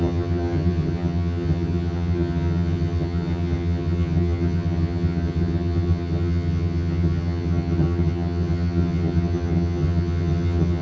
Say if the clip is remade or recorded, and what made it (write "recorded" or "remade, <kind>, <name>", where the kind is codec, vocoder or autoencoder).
remade, vocoder, HiFi-GAN